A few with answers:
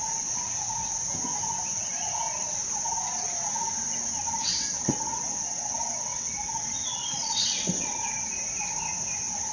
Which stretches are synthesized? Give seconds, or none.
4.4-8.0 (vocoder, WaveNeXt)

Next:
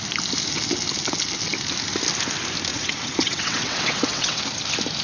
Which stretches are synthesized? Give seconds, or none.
2.7-4.4 (vocoder, WaveNeXt)

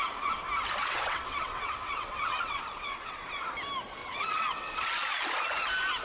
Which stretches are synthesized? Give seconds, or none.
0.9-3.5 (vocoder, WaveNeXt); 4.0-4.9

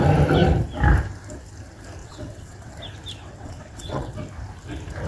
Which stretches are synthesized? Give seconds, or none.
2.0-2.7 (vocoder, WaveNeXt); 3.2-4.1

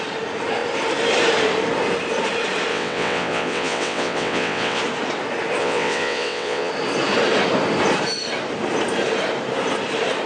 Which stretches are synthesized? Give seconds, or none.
2.7-4.8 (vocoder, WaveNeXt); 5.6-6.7

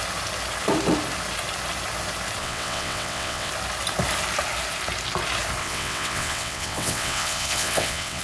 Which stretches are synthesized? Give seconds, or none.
2.4-3.5 (vocoder, WaveNeXt); 5.6-8.2

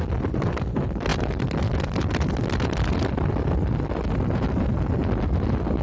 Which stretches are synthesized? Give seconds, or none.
none